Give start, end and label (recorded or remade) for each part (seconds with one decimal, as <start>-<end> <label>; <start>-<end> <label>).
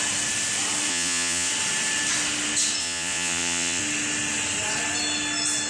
0.0-0.9 recorded; 0.9-1.5 remade; 1.5-2.8 recorded; 2.8-3.8 remade; 3.8-5.7 recorded